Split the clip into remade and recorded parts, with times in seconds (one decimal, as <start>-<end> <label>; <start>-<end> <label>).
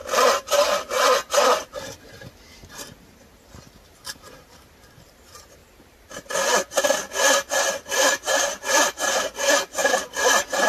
0.0-2.7 recorded; 2.7-5.6 remade; 5.6-7.7 recorded; 7.7-9.8 remade; 9.8-10.7 recorded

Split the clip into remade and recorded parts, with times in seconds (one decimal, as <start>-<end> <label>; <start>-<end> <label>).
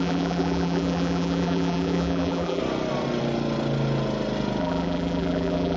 0.0-2.6 remade; 2.6-4.6 recorded; 4.6-5.8 remade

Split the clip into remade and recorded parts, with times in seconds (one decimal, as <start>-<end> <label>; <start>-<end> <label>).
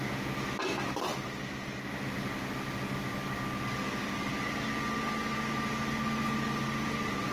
0.0-7.3 recorded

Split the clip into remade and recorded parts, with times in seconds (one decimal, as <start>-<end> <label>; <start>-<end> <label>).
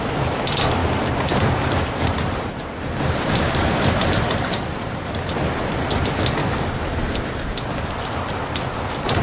0.0-0.8 recorded; 0.8-5.3 remade; 5.3-9.2 recorded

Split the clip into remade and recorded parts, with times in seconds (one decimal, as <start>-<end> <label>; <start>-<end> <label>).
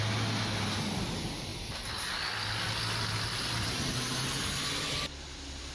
0.0-5.7 recorded